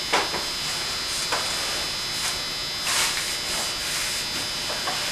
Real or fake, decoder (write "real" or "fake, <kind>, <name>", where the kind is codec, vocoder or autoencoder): real